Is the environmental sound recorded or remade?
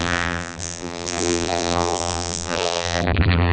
remade